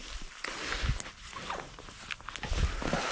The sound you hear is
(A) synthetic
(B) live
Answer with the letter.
B